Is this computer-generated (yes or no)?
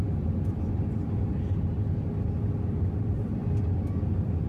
no